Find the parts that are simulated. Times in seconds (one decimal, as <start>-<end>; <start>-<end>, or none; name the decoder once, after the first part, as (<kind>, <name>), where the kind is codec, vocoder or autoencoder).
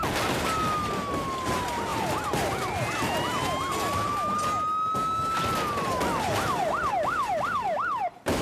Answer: none